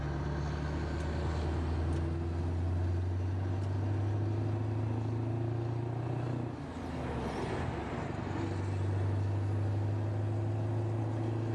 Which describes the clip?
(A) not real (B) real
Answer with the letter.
B